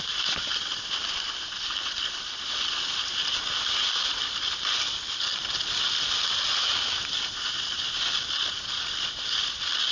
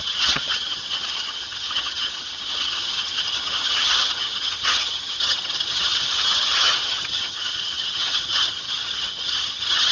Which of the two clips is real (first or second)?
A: first